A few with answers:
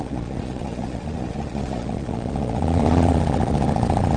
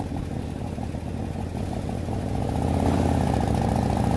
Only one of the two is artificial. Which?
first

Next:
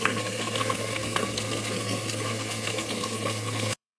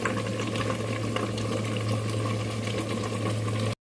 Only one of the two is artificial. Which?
first